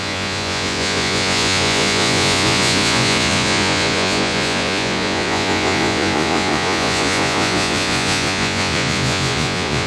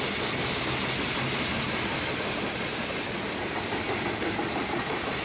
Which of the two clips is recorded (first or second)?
second